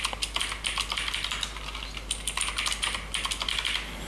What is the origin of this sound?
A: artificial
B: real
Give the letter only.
B